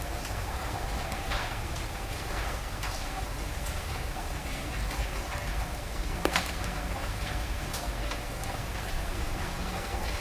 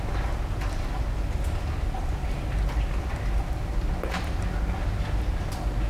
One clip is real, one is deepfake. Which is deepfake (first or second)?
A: first